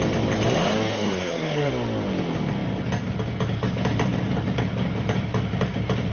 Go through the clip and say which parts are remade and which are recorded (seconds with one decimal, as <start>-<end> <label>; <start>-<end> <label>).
0.0-0.9 recorded; 0.9-1.7 remade; 1.7-6.1 recorded